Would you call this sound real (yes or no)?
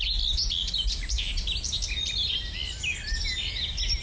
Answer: yes